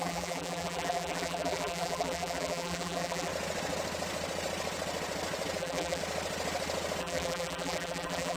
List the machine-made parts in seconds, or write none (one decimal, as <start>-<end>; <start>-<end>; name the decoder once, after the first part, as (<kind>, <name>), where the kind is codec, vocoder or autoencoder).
0.0-3.3 (vocoder, BigVGAN v2); 5.6-6.0; 7.0-8.4